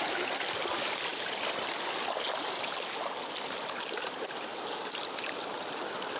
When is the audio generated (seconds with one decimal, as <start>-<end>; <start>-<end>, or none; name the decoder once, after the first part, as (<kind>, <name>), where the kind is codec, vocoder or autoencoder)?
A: none